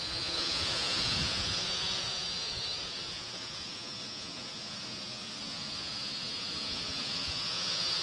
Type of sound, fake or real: fake